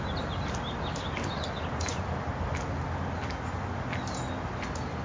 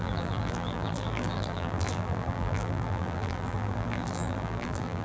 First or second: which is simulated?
second